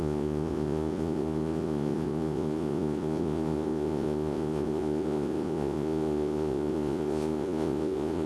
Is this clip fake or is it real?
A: fake